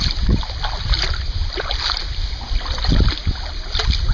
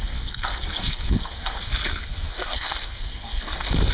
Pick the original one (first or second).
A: first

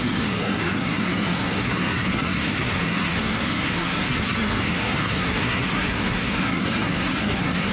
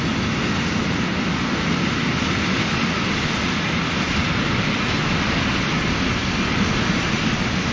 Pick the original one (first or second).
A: second